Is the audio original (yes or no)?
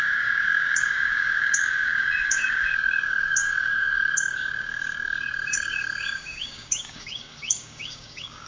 no